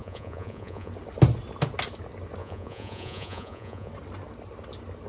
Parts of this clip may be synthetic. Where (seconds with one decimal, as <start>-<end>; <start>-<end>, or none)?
0.0-0.9; 2.4-3.9